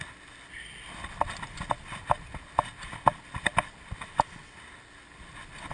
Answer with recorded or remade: recorded